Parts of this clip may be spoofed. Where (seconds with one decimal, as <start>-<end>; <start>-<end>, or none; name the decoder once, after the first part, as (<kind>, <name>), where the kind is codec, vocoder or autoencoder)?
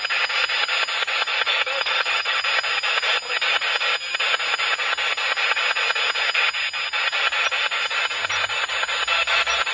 1.5-2.4 (autoencoder, DAC-VAE)